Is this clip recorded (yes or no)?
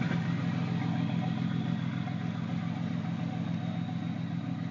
yes